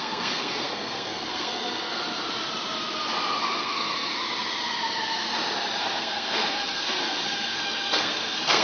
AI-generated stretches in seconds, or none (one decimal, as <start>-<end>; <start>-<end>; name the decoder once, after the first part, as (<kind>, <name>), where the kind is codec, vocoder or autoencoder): 0.0-2.0 (codec, SNAC); 3.4-4.2; 5.8-8.6